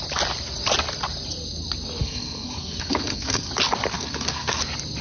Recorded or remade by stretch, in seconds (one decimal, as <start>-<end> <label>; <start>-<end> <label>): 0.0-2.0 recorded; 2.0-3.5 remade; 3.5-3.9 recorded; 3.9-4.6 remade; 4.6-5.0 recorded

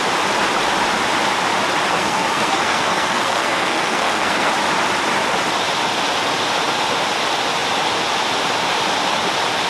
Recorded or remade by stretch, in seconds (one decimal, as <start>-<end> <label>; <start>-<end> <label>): 0.0-1.9 recorded; 1.9-4.5 remade; 4.5-9.7 recorded

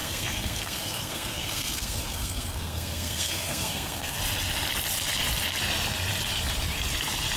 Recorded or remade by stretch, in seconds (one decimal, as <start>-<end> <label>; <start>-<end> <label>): 0.0-4.2 remade; 4.2-7.4 recorded